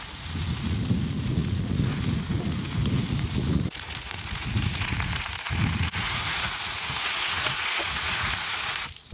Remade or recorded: remade